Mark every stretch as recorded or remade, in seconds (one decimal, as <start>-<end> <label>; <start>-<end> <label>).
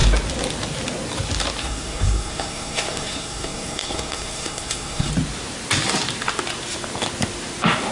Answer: 0.0-1.6 recorded; 1.6-5.1 remade; 5.1-7.9 recorded